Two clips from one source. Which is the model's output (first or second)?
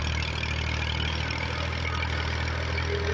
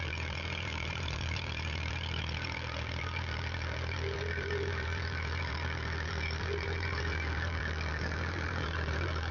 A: second